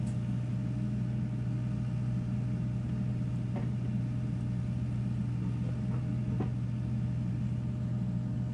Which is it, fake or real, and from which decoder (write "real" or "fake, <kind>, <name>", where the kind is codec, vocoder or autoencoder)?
real